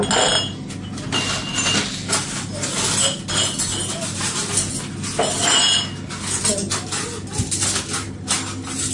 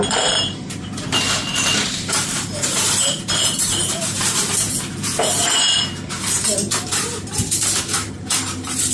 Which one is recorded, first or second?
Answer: first